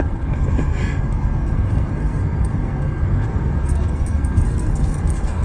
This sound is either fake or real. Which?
fake